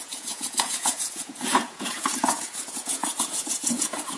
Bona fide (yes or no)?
no